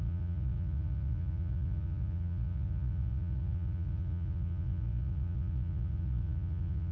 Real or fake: fake